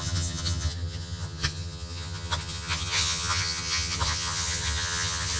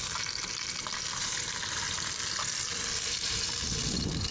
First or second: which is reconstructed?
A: first